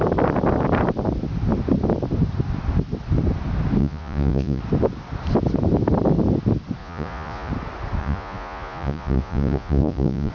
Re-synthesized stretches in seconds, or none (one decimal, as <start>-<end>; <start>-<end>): 3.8-4.6; 6.8-7.5; 8.0-10.3